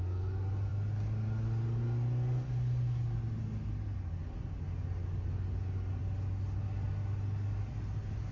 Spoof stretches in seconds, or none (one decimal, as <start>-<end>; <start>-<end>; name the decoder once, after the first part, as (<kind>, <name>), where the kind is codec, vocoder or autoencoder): none